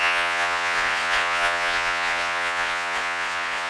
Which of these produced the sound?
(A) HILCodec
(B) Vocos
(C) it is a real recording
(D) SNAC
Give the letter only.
B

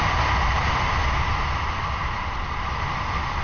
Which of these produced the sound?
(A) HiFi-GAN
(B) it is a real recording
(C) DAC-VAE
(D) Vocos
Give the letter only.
B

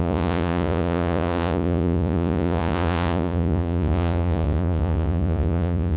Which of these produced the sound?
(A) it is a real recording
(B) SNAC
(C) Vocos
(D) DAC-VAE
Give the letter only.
C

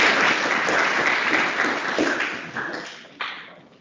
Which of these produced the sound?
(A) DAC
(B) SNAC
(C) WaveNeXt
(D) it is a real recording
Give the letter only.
D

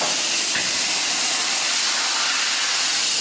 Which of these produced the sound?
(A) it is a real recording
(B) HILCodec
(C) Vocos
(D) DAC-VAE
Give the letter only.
A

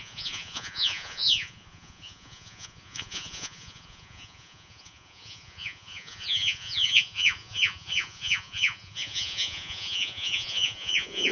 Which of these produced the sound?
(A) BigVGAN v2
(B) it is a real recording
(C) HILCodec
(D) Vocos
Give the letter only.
D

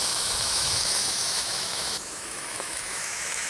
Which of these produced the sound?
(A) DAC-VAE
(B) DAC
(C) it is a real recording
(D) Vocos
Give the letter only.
A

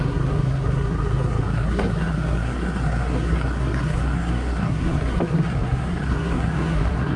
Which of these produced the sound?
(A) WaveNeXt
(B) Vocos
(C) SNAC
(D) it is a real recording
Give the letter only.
C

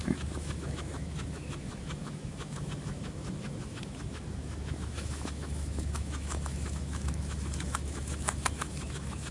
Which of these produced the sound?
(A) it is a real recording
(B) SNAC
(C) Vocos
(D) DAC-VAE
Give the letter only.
D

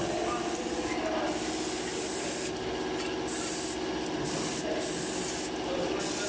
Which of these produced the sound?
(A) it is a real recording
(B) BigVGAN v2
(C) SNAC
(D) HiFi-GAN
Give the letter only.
A